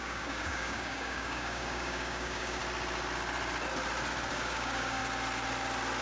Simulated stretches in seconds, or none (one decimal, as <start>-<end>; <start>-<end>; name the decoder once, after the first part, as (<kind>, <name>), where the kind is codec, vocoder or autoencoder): 0.0-2.6 (codec, DAC); 4.3-5.0